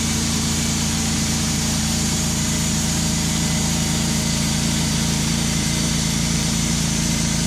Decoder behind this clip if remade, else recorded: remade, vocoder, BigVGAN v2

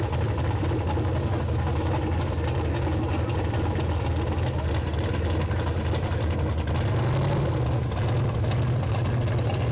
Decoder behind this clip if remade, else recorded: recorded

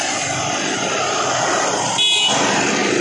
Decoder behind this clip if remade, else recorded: recorded